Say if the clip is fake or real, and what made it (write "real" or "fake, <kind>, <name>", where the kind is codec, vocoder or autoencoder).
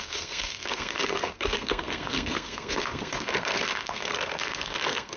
fake, codec, SNAC